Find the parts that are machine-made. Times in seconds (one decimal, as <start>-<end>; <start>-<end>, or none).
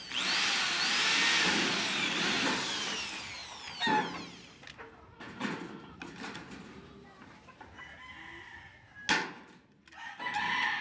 none